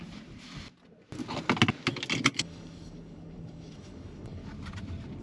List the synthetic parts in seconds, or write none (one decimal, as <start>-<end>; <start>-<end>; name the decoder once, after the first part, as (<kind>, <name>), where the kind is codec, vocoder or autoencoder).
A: 2.3-4.4 (codec, DAC)